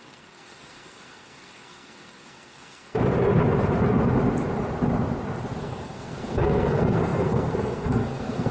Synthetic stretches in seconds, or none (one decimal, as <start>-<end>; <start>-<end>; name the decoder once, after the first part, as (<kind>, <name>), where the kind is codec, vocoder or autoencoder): 0.0-3.0 (codec, SNAC); 5.6-8.5